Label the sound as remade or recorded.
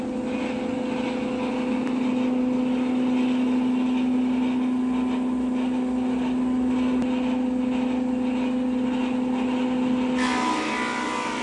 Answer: recorded